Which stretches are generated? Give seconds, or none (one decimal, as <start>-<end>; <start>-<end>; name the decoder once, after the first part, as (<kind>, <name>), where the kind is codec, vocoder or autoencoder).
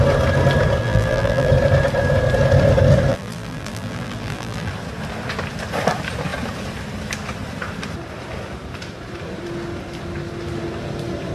0.8-1.5 (vocoder, BigVGAN v2); 3.1-4.7